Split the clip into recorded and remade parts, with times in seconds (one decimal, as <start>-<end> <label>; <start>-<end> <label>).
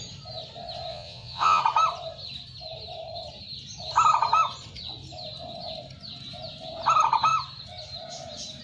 0.0-0.9 recorded; 0.9-1.6 remade; 1.6-8.6 recorded